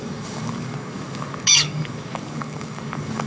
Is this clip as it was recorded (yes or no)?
no